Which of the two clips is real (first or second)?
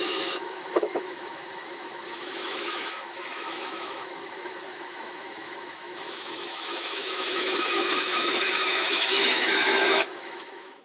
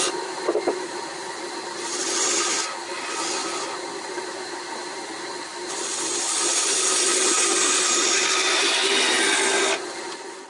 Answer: second